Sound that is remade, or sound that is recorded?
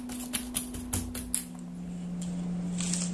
recorded